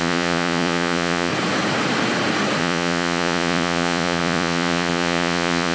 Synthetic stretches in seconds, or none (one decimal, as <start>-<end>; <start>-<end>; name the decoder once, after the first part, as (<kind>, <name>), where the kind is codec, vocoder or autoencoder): 0.0-1.3 (vocoder, Vocos); 2.6-5.7